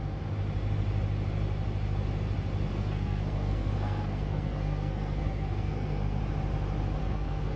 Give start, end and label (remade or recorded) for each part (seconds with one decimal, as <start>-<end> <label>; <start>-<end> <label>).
0.0-2.7 recorded; 2.7-6.2 remade; 6.2-7.0 recorded; 7.0-7.6 remade